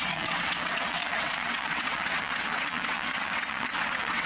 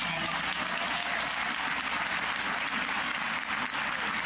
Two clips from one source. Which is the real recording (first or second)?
second